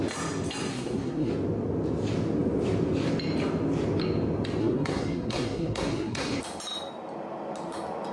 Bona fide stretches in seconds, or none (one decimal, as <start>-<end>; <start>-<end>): 0.0-0.7; 1.3-4.6; 6.4-8.1